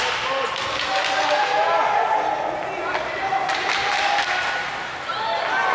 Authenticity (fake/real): real